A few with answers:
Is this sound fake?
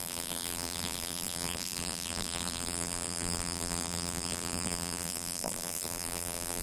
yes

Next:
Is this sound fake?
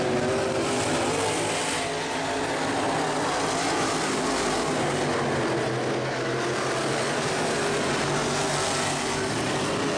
no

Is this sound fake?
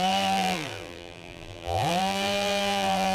yes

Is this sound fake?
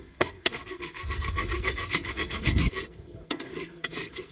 yes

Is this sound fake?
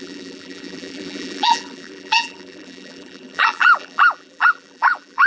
yes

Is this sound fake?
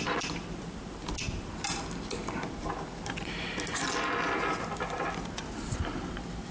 no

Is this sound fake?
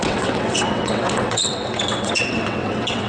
yes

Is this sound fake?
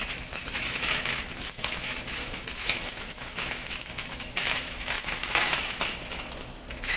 yes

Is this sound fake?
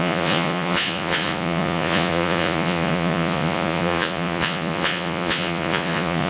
yes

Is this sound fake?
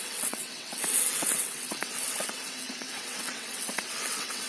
yes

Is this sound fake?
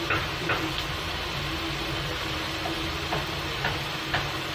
no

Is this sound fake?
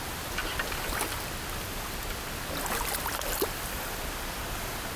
no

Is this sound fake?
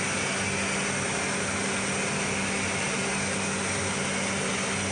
no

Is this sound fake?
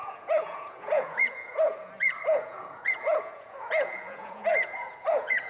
yes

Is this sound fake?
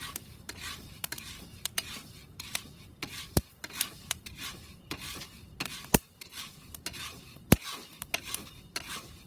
yes